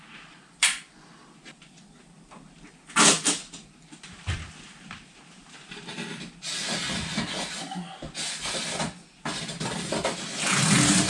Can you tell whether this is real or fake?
real